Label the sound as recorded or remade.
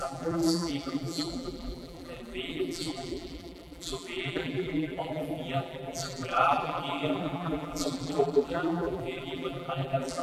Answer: remade